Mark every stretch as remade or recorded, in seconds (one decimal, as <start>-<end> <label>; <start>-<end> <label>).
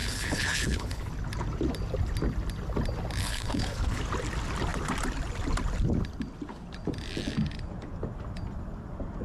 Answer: 0.0-1.1 remade; 1.1-3.2 recorded; 3.2-4.0 remade; 4.0-9.2 recorded